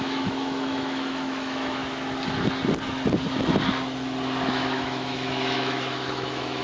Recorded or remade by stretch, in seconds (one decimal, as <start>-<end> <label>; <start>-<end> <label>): 0.0-1.8 remade; 1.8-4.5 recorded; 4.5-6.6 remade